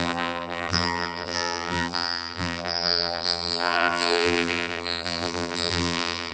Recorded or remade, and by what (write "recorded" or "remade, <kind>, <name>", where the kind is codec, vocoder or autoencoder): remade, vocoder, BigVGAN v2